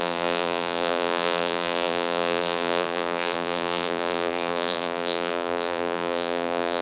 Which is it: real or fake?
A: fake